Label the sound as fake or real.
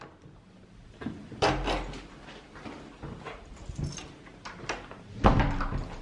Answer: real